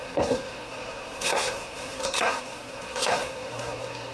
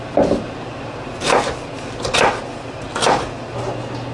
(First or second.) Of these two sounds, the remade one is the first